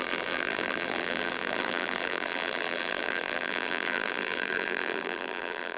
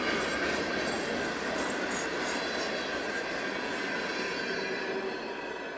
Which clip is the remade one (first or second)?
first